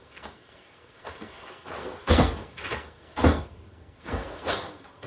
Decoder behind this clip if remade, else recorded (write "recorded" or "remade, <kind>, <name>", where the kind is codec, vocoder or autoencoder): remade, codec, SNAC